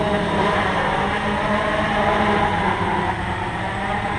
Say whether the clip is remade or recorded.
remade